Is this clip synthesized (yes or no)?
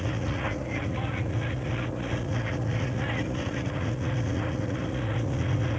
yes